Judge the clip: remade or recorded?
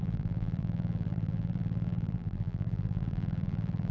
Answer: remade